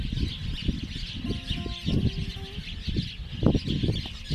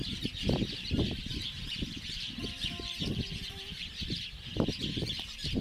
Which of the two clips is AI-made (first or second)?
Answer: second